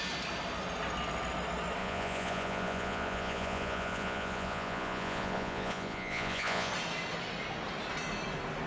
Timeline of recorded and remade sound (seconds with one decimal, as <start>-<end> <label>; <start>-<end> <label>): 0.0-1.8 recorded; 1.8-6.7 remade; 6.7-8.7 recorded